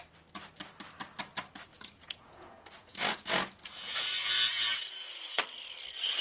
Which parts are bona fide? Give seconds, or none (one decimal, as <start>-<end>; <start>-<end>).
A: 0.0-1.7; 5.4-6.2